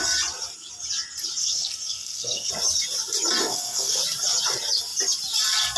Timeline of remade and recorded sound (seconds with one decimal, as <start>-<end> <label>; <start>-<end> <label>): 0.0-1.4 recorded; 1.4-2.5 remade; 2.5-3.4 recorded; 3.4-4.0 remade; 4.0-5.8 recorded